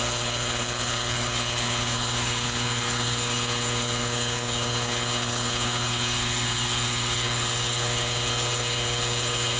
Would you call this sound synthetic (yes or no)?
yes